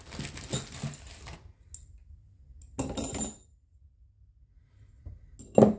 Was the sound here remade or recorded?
recorded